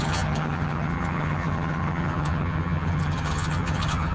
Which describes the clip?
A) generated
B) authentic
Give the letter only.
A